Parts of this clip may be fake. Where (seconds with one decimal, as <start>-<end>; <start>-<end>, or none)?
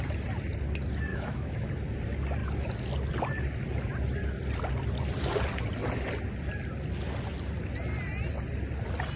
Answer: 1.1-1.7